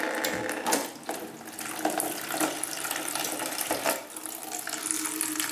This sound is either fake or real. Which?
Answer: real